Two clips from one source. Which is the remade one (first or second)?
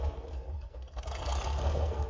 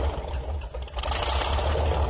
first